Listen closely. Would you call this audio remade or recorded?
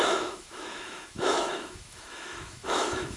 remade